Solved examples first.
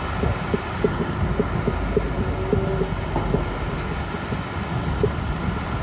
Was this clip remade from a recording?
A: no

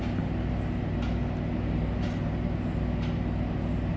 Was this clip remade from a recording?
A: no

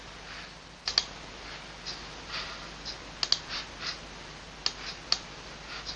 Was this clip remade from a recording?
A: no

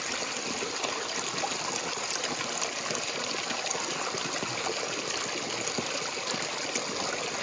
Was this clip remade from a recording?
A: no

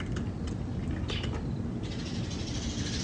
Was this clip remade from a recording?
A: no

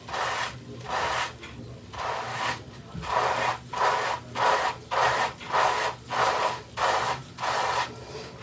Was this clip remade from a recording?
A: no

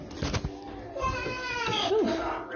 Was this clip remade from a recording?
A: no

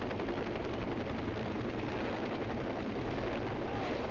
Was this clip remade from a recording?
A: no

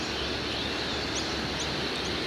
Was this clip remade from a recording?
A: no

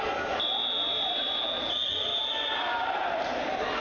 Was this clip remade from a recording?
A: no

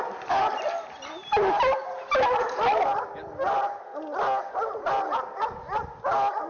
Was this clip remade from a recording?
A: no